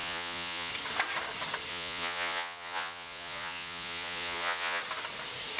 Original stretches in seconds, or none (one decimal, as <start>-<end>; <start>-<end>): 0.7-1.7; 4.8-5.6